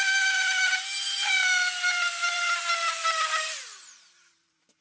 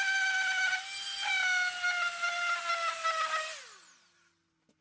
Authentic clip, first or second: second